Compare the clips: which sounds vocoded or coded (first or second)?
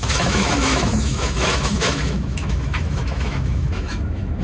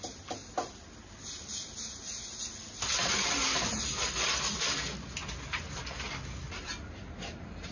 first